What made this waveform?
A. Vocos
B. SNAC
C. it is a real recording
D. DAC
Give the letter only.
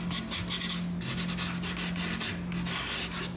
C